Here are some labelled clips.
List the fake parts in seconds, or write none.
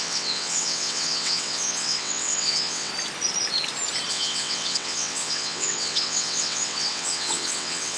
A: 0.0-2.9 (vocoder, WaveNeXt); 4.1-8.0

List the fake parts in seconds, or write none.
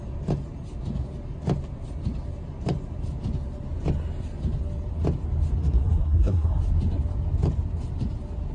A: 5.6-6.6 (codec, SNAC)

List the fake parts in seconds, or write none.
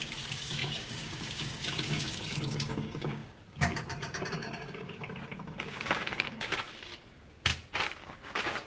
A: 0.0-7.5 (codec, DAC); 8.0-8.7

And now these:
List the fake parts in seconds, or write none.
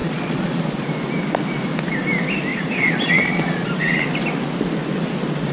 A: 0.0-0.6 (vocoder, Vocos); 2.5-3.7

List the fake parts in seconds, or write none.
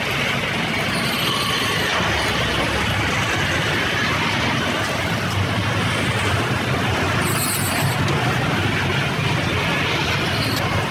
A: none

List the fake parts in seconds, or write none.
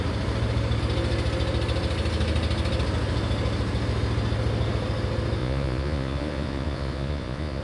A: 5.4-7.6 (vocoder, Vocos)